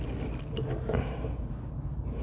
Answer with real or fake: real